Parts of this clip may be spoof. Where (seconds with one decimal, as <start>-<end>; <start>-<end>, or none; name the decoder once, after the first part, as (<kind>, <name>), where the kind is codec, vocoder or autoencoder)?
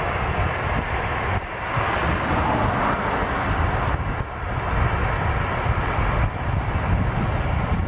none